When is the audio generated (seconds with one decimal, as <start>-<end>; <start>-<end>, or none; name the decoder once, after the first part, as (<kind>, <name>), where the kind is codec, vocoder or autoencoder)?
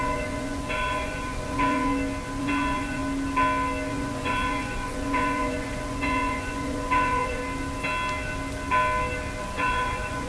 0.0-1.9 (vocoder, Vocos); 2.4-3.0; 3.9-7.4; 9.4-10.3